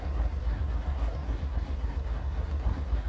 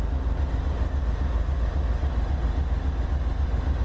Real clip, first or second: second